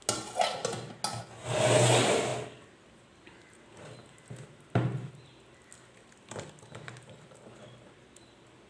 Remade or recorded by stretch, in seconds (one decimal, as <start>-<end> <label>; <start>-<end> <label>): 0.0-8.7 recorded